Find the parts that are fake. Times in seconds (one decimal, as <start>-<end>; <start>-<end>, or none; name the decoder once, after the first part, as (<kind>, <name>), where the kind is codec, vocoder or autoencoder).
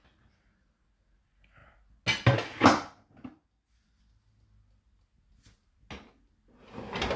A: none